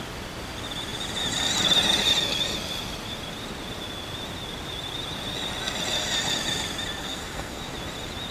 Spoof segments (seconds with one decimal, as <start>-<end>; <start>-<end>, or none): 7.0-7.6